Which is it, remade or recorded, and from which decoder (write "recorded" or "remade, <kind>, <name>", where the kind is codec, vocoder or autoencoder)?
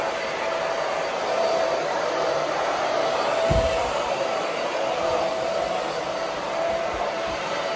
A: remade, vocoder, BigVGAN v2